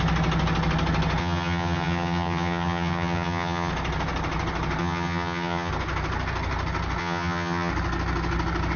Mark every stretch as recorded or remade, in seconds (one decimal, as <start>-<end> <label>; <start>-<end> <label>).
0.0-1.2 recorded; 1.2-3.7 remade; 3.7-4.8 recorded; 4.8-5.7 remade; 5.7-7.0 recorded; 7.0-7.7 remade; 7.7-8.8 recorded